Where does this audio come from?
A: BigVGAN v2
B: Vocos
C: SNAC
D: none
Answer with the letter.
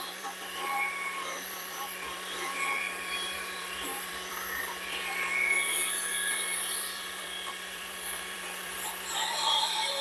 A